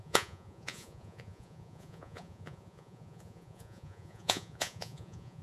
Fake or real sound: fake